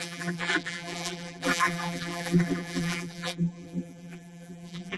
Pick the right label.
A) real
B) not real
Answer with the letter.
B